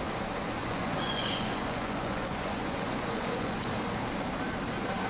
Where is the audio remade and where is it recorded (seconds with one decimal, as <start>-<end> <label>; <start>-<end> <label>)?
0.0-0.6 recorded; 0.6-3.7 remade; 3.7-5.1 recorded